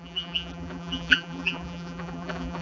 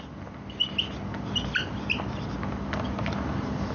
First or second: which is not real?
first